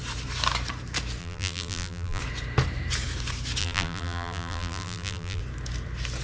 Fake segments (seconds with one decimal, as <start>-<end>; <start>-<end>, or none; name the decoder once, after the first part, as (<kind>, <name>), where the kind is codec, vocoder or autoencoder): 1.2-2.2 (vocoder, BigVGAN v2); 3.6-5.4